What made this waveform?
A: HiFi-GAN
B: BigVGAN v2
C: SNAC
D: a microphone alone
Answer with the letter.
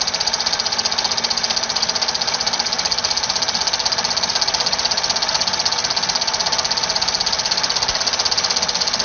D